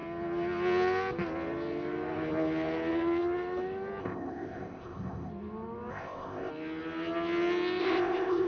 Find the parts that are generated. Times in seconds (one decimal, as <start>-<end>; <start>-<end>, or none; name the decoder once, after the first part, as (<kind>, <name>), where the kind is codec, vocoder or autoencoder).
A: 4.0-5.3 (codec, ZipCodec); 5.9-6.5; 7.8-8.5